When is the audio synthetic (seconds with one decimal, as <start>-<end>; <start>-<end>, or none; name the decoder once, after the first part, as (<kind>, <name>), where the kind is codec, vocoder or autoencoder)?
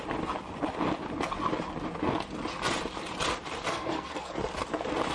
3.7-4.3 (codec, SNAC)